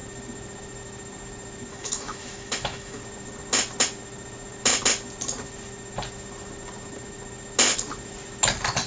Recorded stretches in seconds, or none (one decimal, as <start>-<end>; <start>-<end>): 0.0-1.7; 3.0-8.9